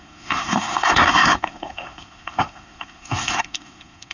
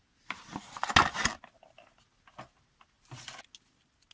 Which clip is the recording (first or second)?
second